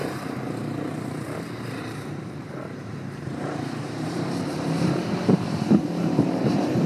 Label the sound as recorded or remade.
remade